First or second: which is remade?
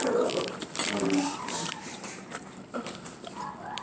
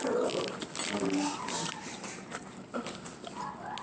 first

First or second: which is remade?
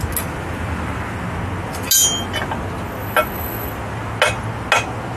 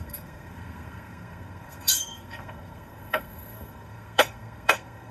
second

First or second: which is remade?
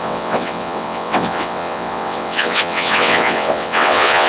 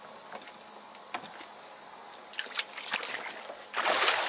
first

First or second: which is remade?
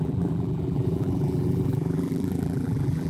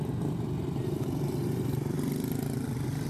first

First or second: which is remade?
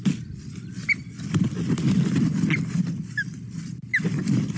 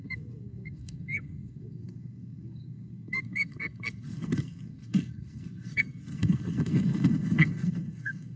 second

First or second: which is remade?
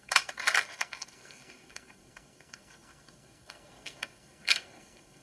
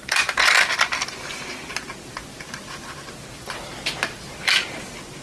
first